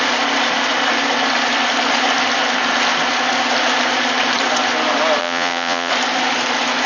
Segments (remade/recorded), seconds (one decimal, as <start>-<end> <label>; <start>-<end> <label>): 0.0-5.2 recorded; 5.2-5.9 remade; 5.9-6.9 recorded